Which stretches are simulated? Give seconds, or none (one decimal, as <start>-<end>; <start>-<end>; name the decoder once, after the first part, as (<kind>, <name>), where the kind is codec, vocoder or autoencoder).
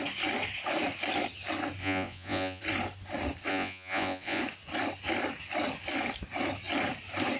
1.8-2.6 (vocoder, Vocos); 3.5-4.4